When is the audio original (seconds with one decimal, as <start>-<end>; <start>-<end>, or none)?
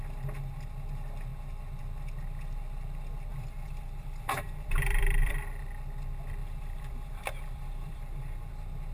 0.0-3.3; 5.6-6.4; 8.5-8.9